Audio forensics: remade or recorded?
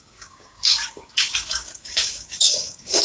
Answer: remade